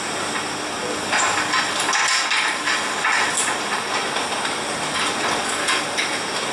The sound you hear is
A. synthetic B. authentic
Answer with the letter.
B